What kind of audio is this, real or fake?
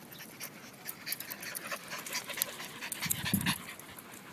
real